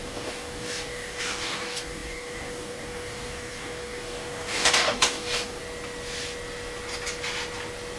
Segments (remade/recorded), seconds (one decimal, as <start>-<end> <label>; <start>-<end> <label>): 0.0-5.6 remade; 5.6-8.0 recorded